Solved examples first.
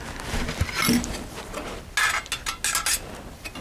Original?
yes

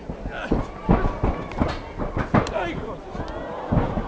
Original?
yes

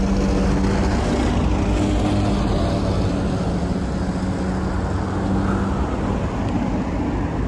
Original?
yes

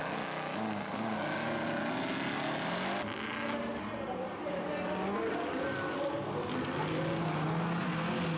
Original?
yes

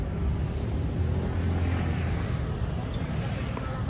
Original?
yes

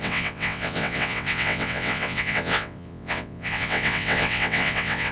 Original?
no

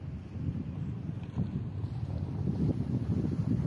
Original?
yes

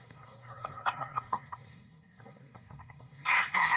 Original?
no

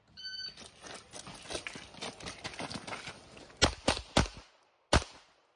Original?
yes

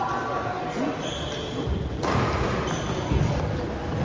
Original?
yes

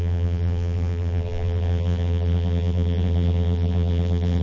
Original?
no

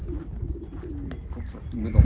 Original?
yes